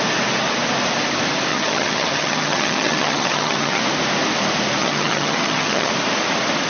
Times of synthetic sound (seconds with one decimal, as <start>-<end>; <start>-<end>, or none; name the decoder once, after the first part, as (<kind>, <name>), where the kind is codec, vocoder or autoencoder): 1.5-3.8 (vocoder, HiFi-GAN); 4.8-5.9

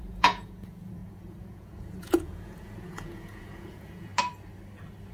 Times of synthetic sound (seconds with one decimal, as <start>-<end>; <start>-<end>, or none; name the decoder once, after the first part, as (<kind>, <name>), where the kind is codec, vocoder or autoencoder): 0.0-4.1 (vocoder, Vocos)

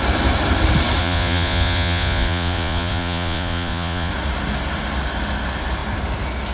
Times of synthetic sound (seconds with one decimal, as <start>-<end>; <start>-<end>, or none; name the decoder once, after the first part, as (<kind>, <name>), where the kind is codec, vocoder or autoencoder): 1.0-4.1 (vocoder, Vocos)

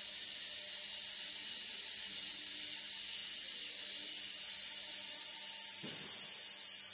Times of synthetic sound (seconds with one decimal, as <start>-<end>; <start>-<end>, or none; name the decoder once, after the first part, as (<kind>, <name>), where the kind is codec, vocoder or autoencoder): none

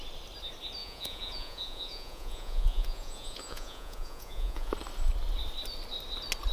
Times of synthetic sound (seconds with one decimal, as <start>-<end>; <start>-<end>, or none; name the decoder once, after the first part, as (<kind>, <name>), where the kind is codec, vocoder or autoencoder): 0.8-4.7 (vocoder, Vocos)